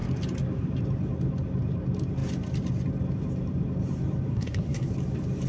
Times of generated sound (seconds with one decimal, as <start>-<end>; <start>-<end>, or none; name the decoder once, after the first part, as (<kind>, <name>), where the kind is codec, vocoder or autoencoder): 4.3-4.9 (codec, SNAC)

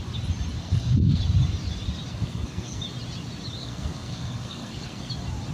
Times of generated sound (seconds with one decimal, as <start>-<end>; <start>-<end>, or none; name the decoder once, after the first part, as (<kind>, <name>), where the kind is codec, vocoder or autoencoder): 0.6-1.2 (codec, SNAC); 2.1-2.8; 3.6-5.1

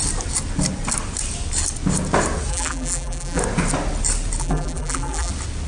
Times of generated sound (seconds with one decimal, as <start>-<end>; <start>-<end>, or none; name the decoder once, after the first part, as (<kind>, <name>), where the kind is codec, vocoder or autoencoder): 2.5-3.4 (vocoder, BigVGAN v2); 4.4-5.3

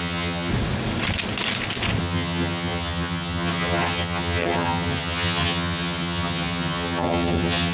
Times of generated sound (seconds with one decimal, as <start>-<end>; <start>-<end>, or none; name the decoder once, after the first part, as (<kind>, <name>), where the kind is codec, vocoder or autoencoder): 0.0-0.5 (vocoder, HiFi-GAN); 2.0-7.7

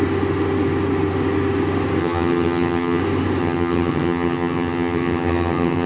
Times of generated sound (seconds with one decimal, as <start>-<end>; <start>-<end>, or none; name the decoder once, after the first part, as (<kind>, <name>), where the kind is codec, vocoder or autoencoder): 2.0-3.0 (vocoder, HiFi-GAN); 3.4-5.9

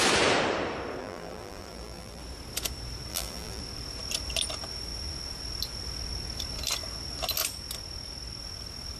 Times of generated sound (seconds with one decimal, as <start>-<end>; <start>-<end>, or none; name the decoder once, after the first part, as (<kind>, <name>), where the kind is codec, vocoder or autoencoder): 1.0-2.2 (vocoder, BigVGAN v2); 3.1-3.6

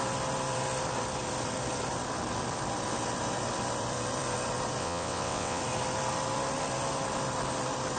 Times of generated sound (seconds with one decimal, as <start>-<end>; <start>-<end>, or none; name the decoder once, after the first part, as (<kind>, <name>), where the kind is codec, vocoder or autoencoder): 4.8-5.6 (vocoder, WaveNeXt)

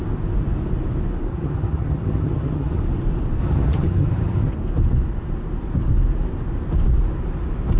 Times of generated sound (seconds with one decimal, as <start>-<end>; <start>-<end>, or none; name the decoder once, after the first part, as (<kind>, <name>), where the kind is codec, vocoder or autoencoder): 1.3-2.8 (vocoder, HiFi-GAN); 3.4-4.5